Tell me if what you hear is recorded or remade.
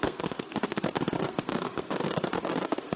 remade